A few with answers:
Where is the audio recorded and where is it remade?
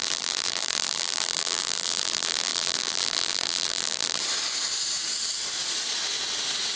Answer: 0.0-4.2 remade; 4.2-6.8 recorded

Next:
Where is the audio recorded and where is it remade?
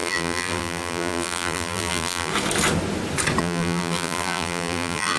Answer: 0.0-2.3 remade; 2.3-3.4 recorded; 3.4-5.2 remade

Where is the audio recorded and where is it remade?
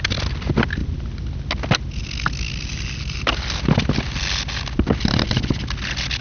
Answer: 0.0-6.2 recorded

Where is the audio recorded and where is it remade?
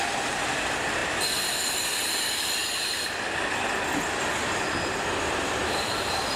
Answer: 0.0-2.6 remade; 2.6-3.9 recorded; 3.9-6.4 remade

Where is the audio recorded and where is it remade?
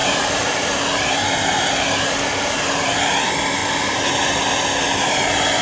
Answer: 0.0-3.0 remade; 3.0-3.6 recorded; 3.6-4.2 remade; 4.2-4.8 recorded; 4.8-5.6 remade